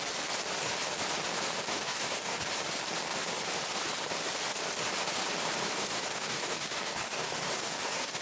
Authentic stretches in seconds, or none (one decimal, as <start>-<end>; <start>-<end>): 0.0-1.7; 2.4-5.6